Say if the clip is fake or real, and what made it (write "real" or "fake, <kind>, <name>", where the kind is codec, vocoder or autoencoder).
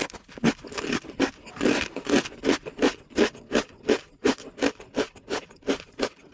real